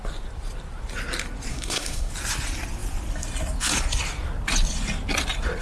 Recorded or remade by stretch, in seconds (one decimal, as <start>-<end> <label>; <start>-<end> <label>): 0.0-1.5 recorded; 1.5-2.1 remade; 2.1-5.6 recorded

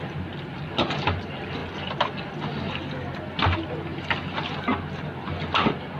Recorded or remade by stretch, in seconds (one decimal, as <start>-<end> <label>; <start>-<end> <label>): 0.0-6.0 recorded